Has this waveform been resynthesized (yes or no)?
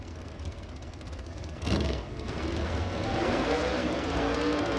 yes